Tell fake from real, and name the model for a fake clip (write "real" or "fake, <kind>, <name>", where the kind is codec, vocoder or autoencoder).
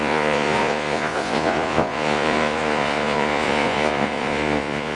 fake, vocoder, Vocos